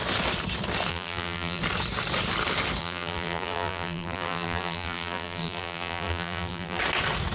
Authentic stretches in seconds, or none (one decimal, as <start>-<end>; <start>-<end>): 0.0-0.9; 1.6-2.8; 6.8-7.3